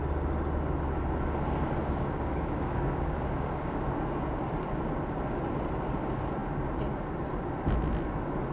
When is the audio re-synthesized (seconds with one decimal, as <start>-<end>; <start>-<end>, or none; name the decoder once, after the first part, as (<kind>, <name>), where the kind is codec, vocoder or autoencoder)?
1.8-4.4 (codec, DAC)